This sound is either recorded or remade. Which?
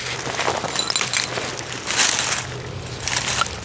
recorded